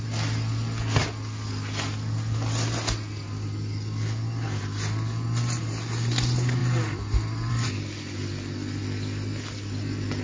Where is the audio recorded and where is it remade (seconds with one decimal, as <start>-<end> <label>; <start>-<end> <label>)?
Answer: 0.0-10.2 recorded